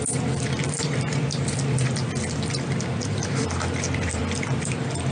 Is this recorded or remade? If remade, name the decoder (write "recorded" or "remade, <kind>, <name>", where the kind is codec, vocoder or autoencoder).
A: remade, vocoder, BigVGAN v2